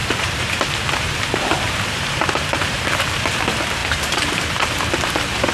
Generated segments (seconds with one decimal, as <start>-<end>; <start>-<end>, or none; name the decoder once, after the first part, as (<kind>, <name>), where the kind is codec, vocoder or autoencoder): 0.0-3.3 (vocoder, BigVGAN v2); 3.8-4.4